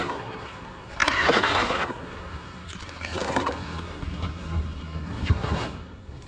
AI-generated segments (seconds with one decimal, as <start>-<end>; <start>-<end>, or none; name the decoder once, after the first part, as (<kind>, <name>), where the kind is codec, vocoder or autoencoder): 0.0-6.3 (codec, SNAC)